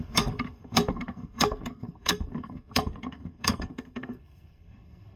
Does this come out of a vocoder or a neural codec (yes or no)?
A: yes